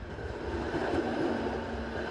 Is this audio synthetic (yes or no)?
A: no